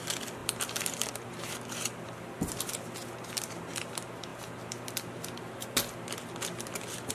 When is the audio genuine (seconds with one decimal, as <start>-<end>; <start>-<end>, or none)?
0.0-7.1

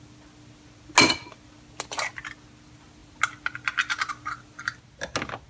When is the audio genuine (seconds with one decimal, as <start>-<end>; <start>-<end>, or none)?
0.0-5.5

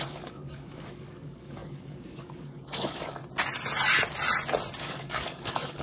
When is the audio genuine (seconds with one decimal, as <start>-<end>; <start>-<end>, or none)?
3.2-4.8

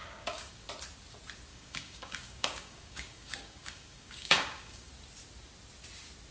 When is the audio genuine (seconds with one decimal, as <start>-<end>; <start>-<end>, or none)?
0.7-1.5; 4.9-6.3

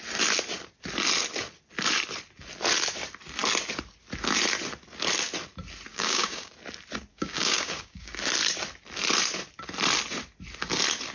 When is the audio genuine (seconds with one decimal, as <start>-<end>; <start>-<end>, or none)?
0.0-5.9; 6.5-7.1; 8.1-11.1

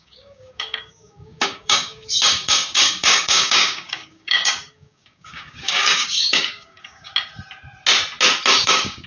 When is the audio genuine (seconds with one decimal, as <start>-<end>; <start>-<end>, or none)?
7.1-8.5

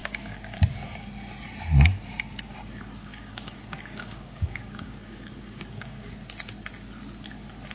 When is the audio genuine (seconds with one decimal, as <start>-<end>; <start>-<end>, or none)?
0.6-3.0; 6.1-7.7